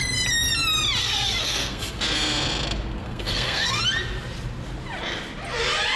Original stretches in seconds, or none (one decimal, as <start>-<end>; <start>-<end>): 0.0-1.0; 2.0-3.0; 3.8-6.0